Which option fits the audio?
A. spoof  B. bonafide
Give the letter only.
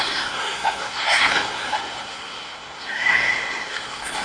A